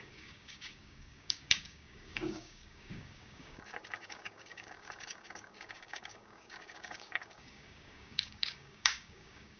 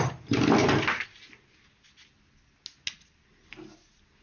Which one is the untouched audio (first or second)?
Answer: second